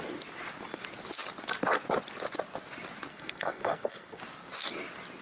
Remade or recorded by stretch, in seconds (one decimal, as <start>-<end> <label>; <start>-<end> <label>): 0.0-3.1 recorded; 3.1-4.2 remade; 4.2-5.2 recorded